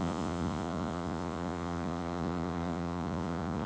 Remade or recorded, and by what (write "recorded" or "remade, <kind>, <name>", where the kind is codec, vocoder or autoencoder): remade, vocoder, Vocos